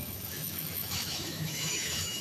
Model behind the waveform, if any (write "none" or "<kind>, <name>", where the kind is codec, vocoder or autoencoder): autoencoder, DAC-VAE